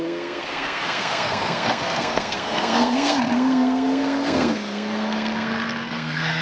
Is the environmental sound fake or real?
fake